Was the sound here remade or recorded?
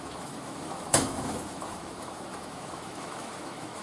remade